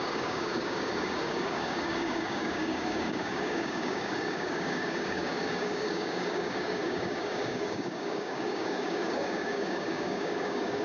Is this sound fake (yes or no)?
yes